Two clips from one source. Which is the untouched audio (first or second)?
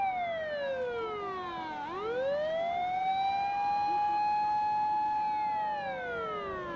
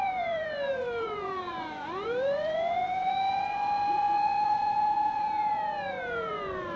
first